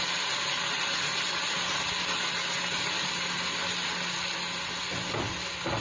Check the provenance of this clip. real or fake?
real